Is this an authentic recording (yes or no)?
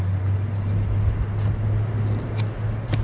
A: yes